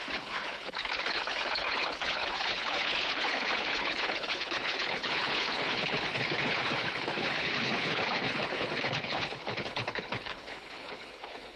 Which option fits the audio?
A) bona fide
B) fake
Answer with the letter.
B